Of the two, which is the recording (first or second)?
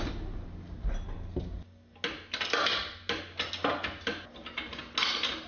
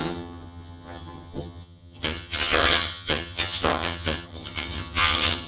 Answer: first